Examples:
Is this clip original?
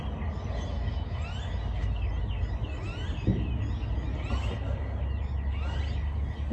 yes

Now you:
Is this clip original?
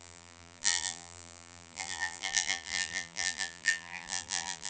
no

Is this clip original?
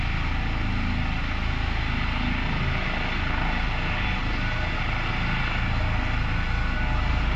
yes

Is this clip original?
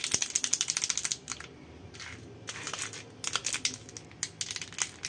yes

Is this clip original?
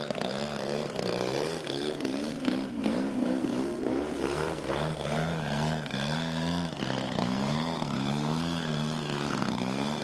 no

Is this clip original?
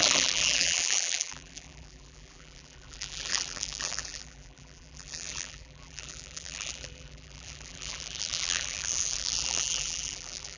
no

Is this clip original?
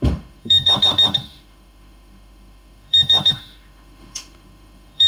no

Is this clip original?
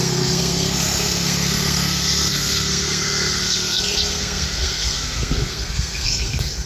no